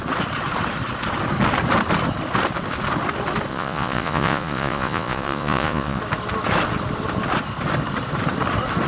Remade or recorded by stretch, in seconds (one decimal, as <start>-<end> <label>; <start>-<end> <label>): 0.0-3.5 recorded; 3.5-6.0 remade; 6.0-8.9 recorded